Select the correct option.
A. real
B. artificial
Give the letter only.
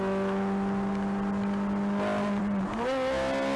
A